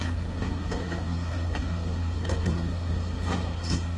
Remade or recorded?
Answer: remade